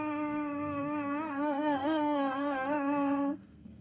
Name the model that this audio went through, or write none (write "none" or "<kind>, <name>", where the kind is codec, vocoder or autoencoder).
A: codec, SNAC